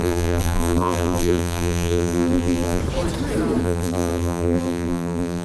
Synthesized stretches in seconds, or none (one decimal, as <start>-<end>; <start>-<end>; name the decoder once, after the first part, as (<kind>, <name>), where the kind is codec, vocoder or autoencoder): 0.0-2.8 (vocoder, BigVGAN v2); 3.6-5.4